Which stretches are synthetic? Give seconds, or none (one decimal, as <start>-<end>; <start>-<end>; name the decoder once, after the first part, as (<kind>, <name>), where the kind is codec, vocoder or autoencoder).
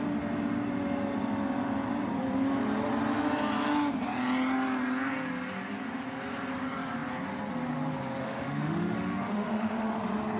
8.2-10.0 (autoencoder, DAC-VAE)